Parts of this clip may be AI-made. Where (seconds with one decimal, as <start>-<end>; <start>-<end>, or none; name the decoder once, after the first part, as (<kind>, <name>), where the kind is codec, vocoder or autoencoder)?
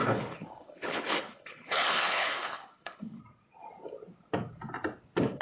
0.0-3.2 (codec, HILCodec)